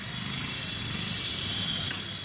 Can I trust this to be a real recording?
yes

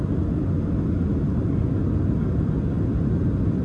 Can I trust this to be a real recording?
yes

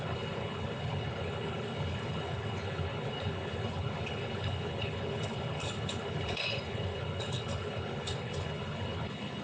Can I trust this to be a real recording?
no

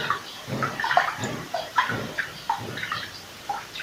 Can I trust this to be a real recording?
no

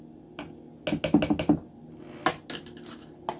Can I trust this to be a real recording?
yes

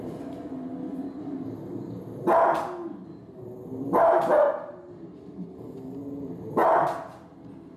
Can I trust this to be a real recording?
yes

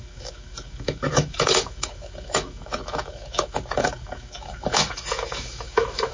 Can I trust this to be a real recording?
no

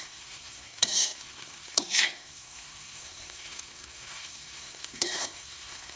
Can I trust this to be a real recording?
no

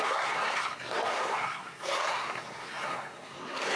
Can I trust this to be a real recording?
no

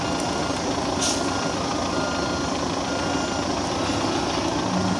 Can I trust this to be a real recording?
yes